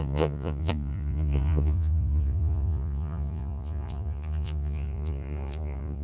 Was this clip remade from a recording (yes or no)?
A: yes